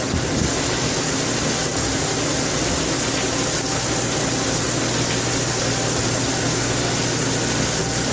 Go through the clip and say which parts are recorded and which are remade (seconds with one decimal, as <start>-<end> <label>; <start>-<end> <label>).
0.0-8.1 recorded